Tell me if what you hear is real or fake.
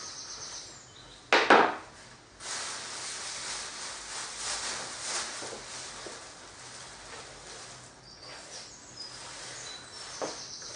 real